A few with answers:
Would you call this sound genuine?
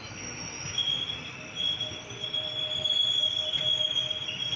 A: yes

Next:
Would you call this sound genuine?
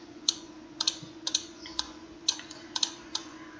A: no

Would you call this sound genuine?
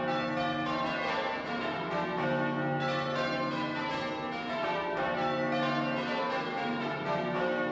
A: yes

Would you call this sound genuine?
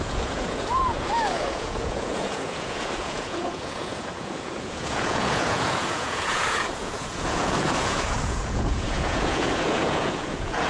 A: no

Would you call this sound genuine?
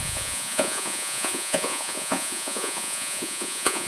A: no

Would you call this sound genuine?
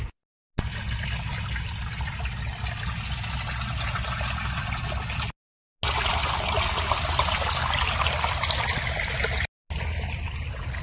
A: yes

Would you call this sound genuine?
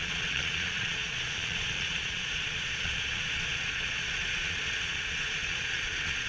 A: no